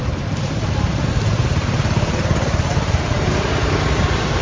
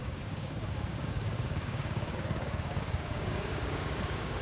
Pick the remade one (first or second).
second